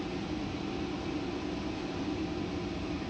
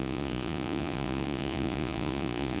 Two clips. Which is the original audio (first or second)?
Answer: first